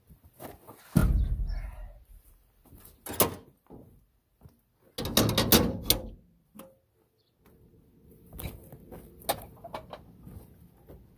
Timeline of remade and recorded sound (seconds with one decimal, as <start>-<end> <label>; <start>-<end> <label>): 0.0-11.2 recorded

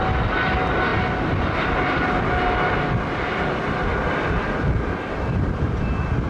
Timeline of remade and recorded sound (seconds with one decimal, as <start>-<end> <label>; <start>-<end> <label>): 0.0-6.3 recorded

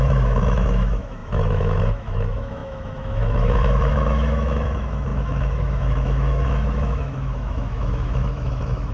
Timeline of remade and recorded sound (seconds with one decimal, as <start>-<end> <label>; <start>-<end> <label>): 0.0-8.9 remade

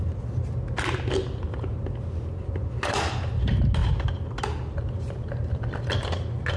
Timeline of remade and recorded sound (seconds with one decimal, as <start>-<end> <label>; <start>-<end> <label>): 0.0-6.6 recorded

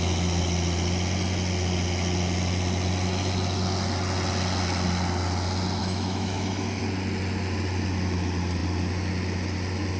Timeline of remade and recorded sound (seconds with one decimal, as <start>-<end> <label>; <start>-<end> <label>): 0.0-5.8 recorded; 5.8-6.8 remade; 6.8-10.0 recorded